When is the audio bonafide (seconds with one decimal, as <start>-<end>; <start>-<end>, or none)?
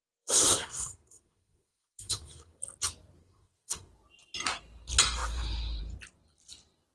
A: 2.6-3.2; 3.9-6.9